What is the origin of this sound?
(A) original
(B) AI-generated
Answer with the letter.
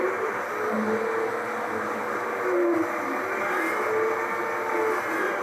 A